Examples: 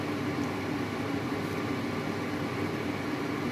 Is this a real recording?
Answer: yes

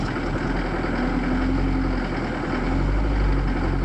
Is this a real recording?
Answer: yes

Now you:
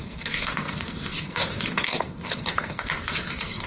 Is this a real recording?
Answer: no